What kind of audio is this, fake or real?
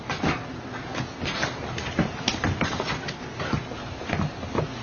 real